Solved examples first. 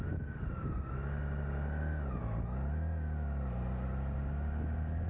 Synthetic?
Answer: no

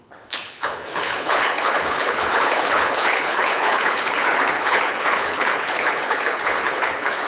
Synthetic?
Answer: yes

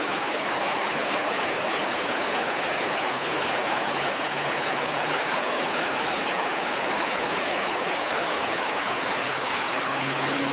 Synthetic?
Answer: yes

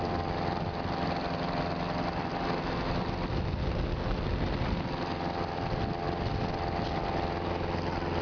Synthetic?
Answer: no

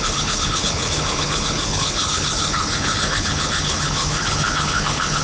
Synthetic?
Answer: yes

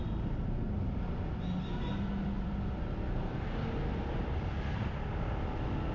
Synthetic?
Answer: no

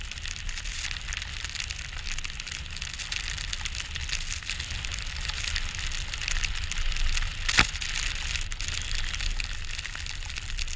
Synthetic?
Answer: no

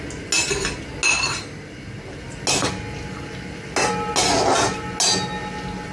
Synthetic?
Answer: no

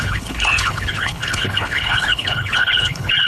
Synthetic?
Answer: yes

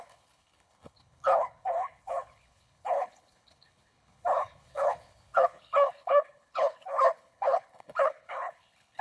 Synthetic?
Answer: yes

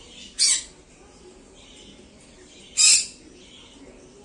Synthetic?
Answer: no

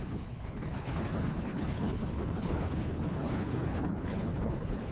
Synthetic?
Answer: yes